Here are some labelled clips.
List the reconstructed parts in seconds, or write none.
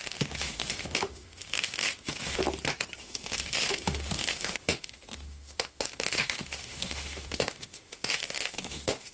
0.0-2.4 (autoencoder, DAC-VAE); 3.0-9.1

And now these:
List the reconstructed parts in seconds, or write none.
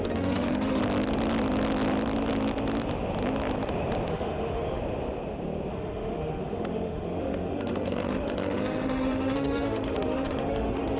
0.0-0.8 (autoencoder, DAC-VAE); 4.1-4.8; 5.7-11.0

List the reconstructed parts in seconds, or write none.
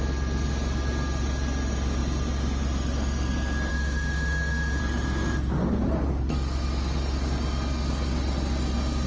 3.7-4.8 (autoencoder, DAC-VAE)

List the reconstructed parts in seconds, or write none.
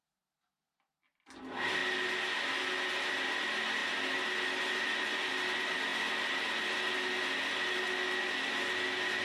none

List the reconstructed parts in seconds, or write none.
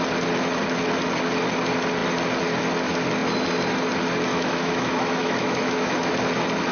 4.3-6.1 (autoencoder, DAC-VAE)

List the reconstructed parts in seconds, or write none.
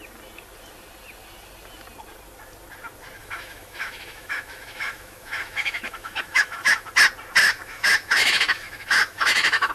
3.2-6.9 (autoencoder, DAC-VAE); 7.4-9.7